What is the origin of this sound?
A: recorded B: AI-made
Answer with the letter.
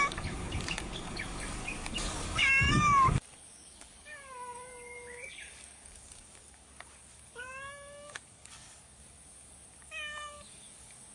B